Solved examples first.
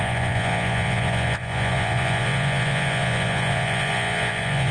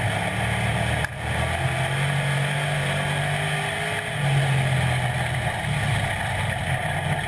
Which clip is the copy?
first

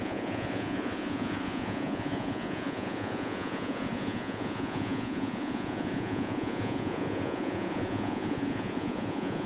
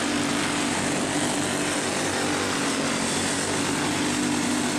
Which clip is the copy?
first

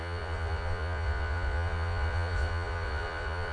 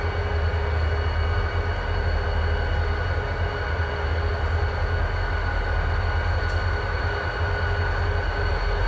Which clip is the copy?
first